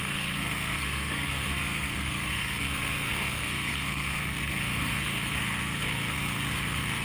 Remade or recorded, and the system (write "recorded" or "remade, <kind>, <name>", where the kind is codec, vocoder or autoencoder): remade, codec, SNAC